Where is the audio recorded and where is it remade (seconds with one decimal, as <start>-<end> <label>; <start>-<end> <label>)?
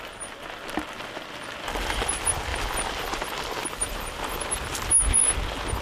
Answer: 0.0-2.5 recorded; 2.5-4.3 remade; 4.3-5.8 recorded